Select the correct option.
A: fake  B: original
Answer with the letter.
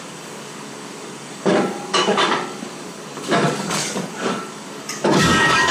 A